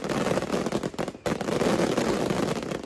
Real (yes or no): yes